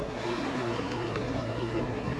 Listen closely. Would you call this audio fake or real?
fake